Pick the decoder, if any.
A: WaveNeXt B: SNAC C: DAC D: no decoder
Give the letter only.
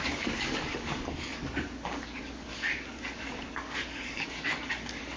C